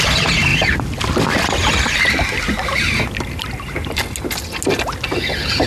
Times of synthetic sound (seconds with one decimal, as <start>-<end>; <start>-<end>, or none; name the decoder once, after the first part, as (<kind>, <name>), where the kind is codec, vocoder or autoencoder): none